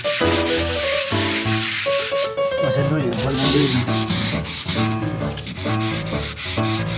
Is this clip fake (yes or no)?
yes